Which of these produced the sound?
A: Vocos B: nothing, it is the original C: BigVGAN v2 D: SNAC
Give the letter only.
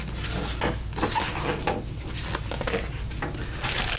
B